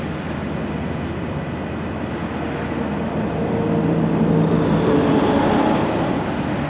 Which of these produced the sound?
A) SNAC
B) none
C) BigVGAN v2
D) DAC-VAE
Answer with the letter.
B